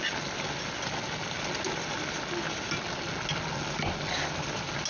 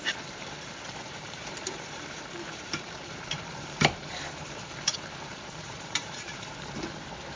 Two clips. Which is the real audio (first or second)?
first